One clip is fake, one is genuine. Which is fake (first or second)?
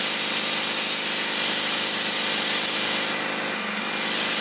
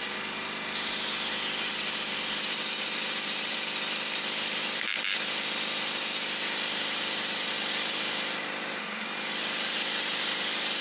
second